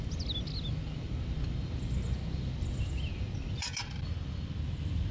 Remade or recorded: recorded